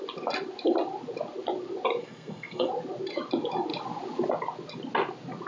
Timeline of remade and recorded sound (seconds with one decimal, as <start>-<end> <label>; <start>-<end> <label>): 0.0-2.0 recorded; 2.0-2.7 remade; 2.7-5.5 recorded